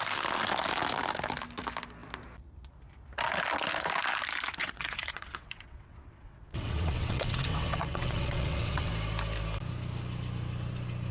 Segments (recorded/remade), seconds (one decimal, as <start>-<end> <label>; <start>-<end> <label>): 0.0-4.6 recorded; 4.6-8.9 remade; 8.9-11.1 recorded